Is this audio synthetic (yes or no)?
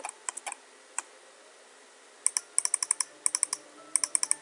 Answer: no